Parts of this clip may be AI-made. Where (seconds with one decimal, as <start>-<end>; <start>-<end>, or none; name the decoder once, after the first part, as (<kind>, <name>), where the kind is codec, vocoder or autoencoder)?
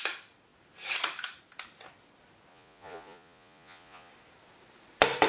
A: 2.5-4.1 (vocoder, Vocos)